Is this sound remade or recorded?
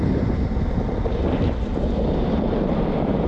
recorded